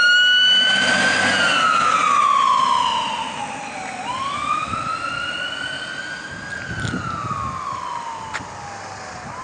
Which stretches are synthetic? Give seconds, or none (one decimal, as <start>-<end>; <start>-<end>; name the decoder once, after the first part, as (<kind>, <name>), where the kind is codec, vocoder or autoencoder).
none

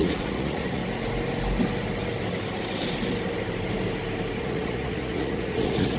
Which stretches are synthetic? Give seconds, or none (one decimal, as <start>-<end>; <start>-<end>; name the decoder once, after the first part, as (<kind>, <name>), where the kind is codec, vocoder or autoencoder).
0.0-0.8 (vocoder, Vocos); 4.4-6.0

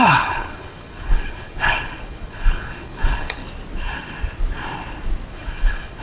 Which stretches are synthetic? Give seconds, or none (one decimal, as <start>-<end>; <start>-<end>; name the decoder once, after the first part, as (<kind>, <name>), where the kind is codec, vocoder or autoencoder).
0.0-3.4 (codec, HILCodec); 5.3-6.0

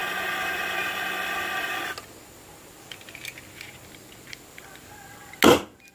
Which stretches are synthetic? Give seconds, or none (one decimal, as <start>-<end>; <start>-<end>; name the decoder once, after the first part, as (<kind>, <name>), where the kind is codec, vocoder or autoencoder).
none

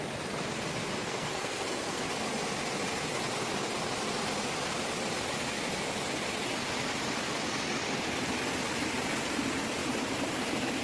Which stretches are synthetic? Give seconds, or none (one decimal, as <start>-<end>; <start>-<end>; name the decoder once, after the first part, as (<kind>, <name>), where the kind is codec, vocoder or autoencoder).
1.0-2.0 (codec, SNAC)

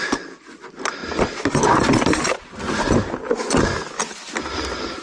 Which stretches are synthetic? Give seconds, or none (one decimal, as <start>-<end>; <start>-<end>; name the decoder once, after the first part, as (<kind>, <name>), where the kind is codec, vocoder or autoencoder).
none